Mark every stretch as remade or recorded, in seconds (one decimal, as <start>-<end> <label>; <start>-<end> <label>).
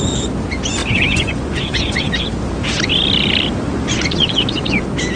0.0-0.8 recorded; 0.8-2.0 remade; 2.0-3.7 recorded; 3.7-4.8 remade; 4.8-5.2 recorded